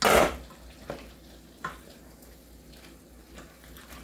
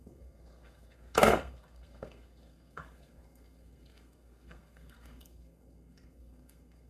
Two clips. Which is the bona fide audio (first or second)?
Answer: first